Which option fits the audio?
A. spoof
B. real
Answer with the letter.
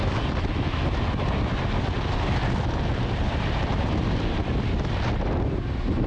B